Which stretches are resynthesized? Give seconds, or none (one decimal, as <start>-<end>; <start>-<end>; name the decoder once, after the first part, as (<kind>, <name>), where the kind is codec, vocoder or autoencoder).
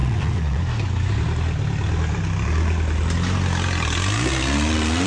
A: 0.0-0.6 (vocoder, WaveNeXt)